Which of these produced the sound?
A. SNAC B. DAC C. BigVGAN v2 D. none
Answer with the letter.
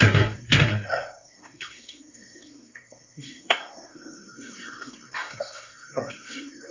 A